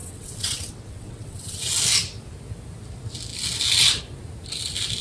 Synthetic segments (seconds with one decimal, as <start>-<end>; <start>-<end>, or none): 0.0-1.7